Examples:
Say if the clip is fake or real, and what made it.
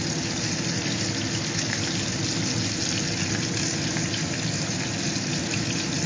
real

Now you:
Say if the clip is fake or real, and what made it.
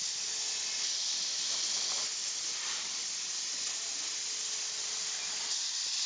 real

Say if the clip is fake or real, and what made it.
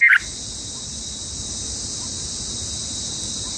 real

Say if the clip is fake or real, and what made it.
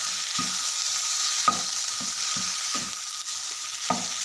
real